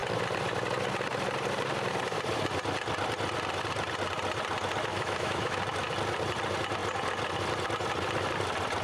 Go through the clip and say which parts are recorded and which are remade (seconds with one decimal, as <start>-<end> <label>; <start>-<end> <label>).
0.0-4.9 recorded; 4.9-5.6 remade; 5.6-8.8 recorded